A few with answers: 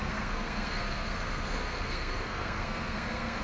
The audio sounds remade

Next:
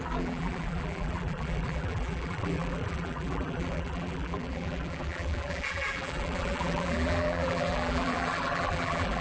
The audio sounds remade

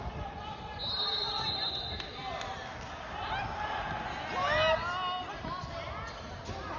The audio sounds recorded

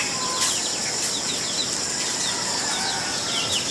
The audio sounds recorded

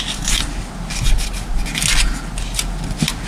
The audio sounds recorded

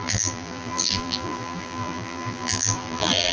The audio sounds remade